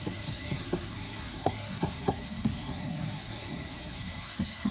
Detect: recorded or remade remade